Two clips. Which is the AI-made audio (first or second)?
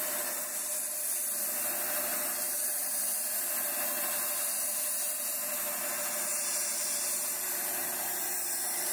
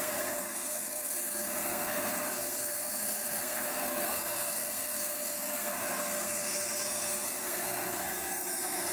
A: second